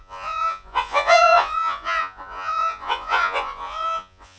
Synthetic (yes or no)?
yes